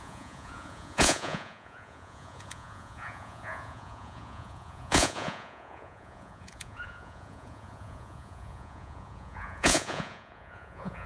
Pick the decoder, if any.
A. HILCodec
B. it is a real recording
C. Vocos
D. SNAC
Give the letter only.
C